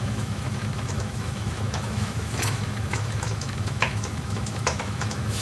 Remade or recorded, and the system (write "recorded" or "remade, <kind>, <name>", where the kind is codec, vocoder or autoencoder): remade, autoencoder, DAC-VAE